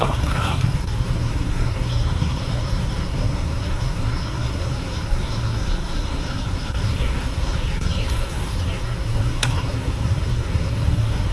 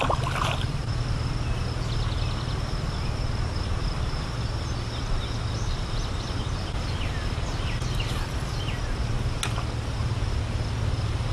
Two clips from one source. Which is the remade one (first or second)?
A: first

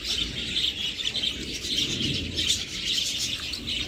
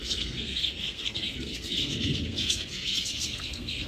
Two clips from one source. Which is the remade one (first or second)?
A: second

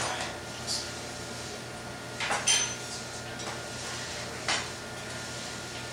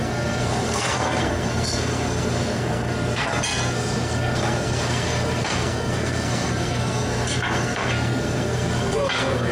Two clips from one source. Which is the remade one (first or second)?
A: second